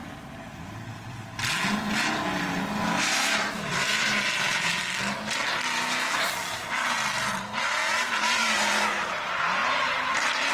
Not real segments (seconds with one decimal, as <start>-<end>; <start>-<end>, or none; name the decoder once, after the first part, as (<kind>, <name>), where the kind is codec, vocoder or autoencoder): 3.0-4.8 (vocoder, BigVGAN v2); 8.0-10.5